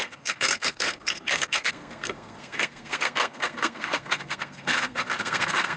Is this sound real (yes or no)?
no